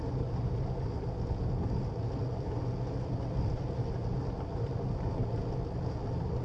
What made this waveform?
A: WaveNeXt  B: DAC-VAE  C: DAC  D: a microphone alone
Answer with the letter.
D